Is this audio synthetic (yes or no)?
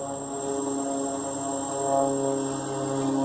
no